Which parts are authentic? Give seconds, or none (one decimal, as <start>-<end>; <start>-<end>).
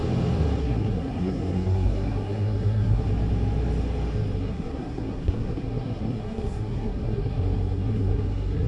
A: 0.0-0.6; 3.1-4.4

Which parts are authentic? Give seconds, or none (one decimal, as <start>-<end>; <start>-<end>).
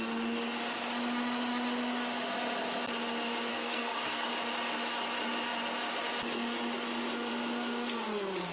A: 0.0-3.5; 4.3-8.5